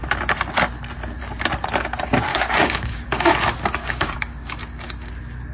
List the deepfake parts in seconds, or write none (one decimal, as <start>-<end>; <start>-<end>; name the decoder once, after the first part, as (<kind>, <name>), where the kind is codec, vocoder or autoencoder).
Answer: 2.3-3.3 (codec, DAC); 3.8-5.1